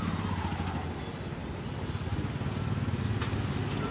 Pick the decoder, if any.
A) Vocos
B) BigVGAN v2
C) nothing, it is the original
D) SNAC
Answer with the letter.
C